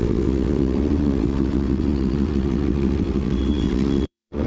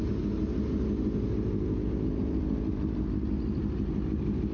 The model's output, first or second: first